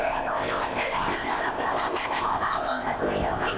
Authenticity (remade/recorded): remade